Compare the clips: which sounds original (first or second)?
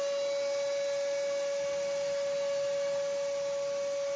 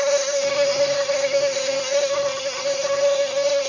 first